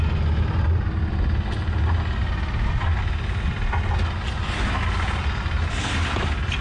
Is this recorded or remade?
recorded